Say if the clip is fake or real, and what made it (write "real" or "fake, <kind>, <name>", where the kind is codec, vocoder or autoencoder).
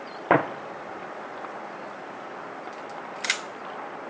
real